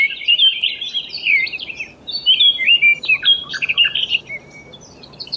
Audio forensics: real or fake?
fake